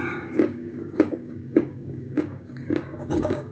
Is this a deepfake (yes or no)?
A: yes